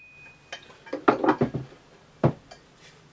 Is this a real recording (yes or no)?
yes